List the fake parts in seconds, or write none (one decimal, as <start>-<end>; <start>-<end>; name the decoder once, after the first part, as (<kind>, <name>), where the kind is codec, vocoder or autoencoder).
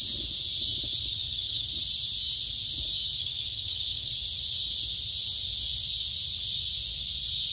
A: 1.1-1.7 (vocoder, HiFi-GAN); 3.2-4.1